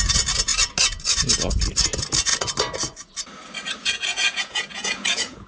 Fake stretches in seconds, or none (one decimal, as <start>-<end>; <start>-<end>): 3.8-5.5